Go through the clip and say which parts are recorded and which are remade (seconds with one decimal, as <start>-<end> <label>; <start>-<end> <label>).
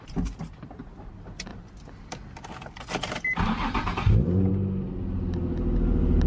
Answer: 0.0-6.3 recorded